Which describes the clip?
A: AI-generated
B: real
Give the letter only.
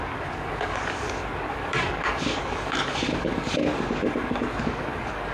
A